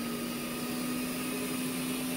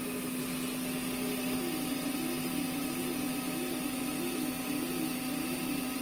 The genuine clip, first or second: first